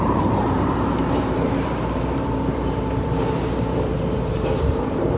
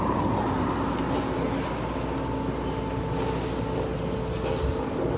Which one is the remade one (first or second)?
first